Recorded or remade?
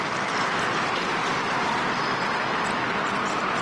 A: recorded